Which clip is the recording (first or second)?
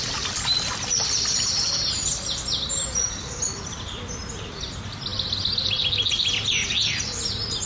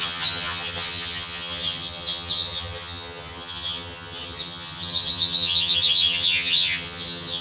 first